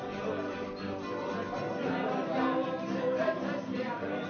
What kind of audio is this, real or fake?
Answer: real